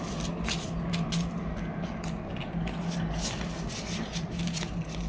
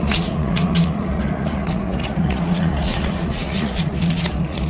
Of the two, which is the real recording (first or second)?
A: first